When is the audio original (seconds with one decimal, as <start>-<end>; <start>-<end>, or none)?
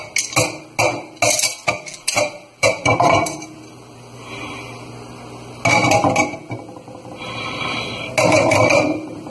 0.0-1.9; 4.9-9.3